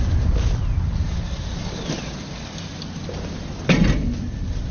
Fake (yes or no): no